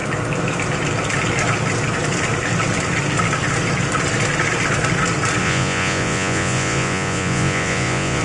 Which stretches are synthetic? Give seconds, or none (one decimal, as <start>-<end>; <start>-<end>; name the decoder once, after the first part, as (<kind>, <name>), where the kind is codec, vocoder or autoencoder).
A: 5.4-8.2 (vocoder, Vocos)